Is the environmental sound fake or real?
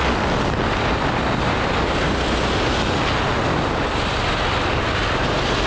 real